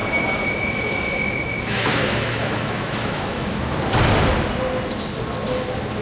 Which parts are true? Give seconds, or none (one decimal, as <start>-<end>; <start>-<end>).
3.6-6.0